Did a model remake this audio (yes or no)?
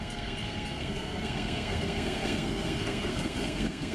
yes